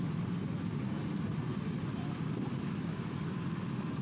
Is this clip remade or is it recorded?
recorded